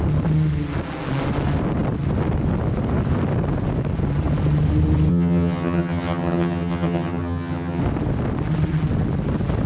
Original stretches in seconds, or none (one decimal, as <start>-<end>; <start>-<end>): 0.0-5.1; 7.8-9.7